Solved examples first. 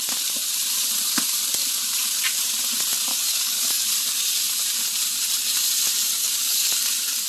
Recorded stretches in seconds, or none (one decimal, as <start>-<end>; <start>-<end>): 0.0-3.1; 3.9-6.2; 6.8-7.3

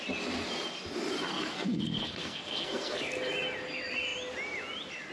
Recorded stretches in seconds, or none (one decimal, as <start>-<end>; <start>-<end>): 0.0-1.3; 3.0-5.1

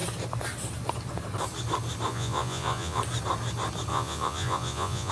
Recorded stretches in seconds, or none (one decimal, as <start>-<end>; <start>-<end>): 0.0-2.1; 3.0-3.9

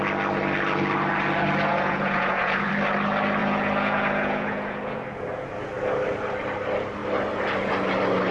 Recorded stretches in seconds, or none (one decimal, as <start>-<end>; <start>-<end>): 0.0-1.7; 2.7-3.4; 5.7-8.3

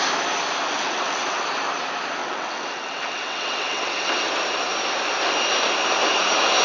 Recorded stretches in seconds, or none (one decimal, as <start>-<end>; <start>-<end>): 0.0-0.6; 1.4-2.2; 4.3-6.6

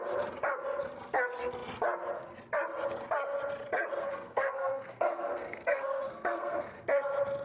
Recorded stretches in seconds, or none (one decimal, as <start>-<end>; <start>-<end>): 0.0-4.0; 6.8-7.4